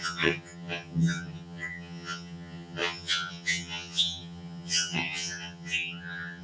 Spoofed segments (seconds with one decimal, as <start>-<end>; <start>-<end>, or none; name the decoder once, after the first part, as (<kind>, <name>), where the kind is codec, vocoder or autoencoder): 0.0-6.4 (vocoder, HiFi-GAN)